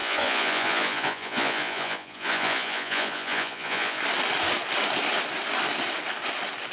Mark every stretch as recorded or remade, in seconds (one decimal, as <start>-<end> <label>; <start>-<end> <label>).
0.0-4.0 remade; 4.0-6.7 recorded